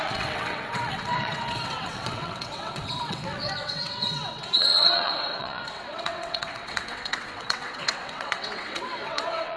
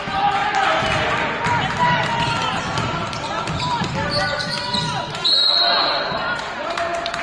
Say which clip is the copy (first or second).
first